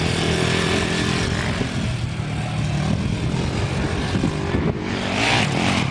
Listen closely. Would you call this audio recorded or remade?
recorded